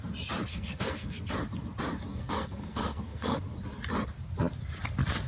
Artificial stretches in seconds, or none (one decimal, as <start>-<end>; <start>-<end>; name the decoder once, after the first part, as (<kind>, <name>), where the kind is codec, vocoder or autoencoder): 0.5-1.3 (codec, SNAC); 2.1-3.4